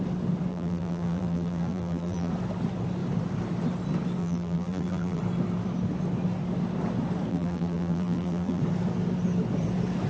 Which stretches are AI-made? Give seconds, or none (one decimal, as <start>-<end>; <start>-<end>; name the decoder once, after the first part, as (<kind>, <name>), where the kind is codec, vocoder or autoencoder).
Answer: 0.5-2.3 (vocoder, BigVGAN v2); 4.2-5.2; 7.3-8.6